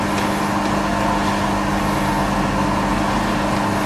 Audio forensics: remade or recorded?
recorded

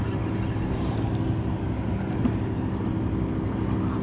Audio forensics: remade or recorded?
recorded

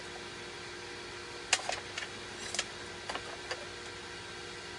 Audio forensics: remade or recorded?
recorded